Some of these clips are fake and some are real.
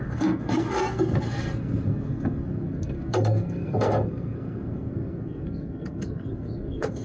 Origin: fake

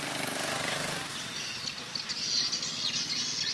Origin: real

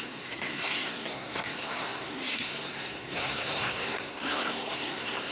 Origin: fake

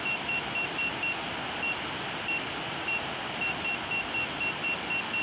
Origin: real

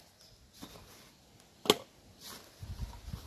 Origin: real